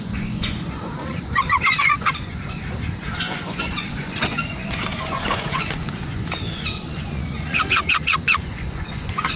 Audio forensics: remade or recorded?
remade